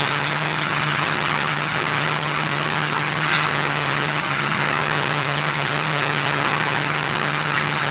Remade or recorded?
remade